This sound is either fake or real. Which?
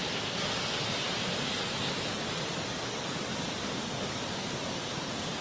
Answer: real